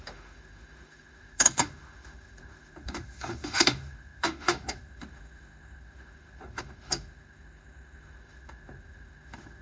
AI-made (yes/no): yes